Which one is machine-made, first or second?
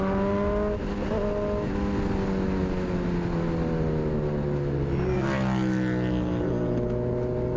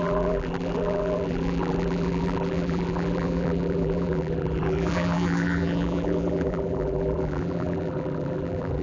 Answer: second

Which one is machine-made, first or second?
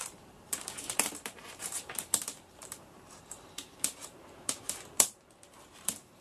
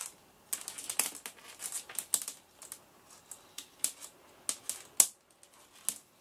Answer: first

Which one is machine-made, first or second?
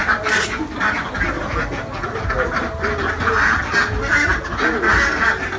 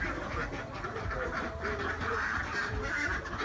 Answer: second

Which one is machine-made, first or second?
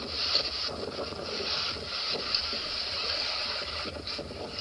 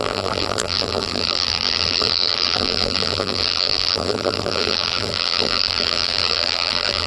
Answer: second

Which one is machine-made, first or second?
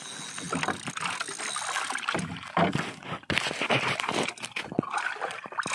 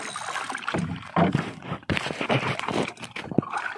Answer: second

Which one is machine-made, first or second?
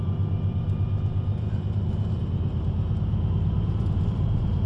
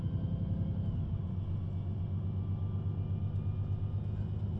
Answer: first